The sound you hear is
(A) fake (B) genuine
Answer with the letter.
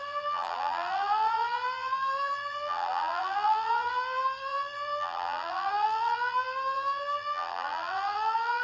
A